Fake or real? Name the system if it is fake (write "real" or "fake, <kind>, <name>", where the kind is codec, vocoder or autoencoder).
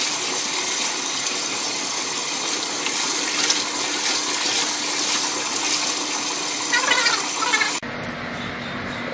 real